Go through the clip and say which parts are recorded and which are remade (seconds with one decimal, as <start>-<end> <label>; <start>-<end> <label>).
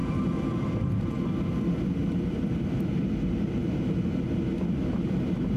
0.0-1.2 remade; 1.2-2.0 recorded; 2.0-2.9 remade; 2.9-5.6 recorded